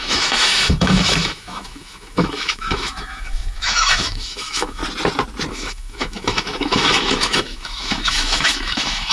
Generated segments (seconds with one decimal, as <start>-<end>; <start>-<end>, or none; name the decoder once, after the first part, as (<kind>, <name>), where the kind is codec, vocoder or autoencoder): 0.0-4.8 (autoencoder, DAC-VAE); 5.5-9.1